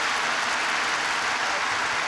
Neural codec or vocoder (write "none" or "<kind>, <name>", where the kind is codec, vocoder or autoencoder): none